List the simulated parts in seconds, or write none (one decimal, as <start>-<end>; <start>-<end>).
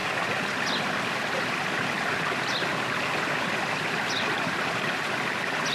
none